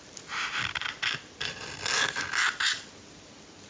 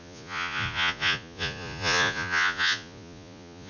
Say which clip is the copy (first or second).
second